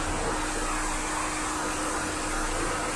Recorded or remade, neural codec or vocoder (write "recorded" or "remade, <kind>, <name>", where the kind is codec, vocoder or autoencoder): recorded